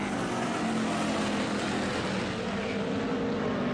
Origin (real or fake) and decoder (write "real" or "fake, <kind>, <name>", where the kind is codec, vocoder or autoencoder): real